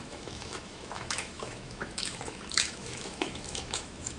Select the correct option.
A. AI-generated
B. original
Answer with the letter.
A